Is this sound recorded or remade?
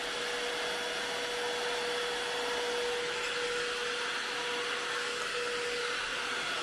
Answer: recorded